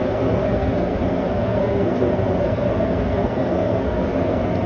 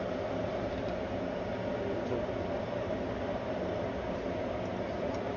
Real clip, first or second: second